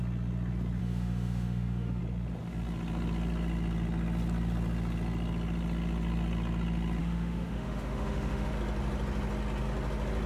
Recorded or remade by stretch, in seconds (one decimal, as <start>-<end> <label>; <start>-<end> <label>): 0.0-0.8 recorded; 0.8-2.0 remade; 2.0-7.0 recorded; 7.0-8.5 remade; 8.5-10.3 recorded